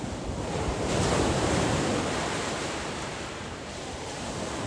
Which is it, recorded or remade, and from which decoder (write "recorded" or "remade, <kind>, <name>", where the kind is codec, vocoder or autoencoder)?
remade, vocoder, BigVGAN v2